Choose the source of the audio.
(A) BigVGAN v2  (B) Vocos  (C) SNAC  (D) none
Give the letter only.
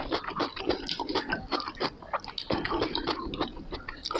D